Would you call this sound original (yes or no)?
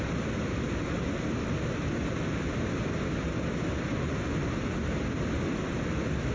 yes